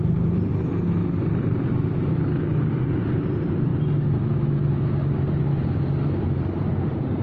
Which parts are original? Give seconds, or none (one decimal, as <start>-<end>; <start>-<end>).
0.5-2.9; 3.7-7.2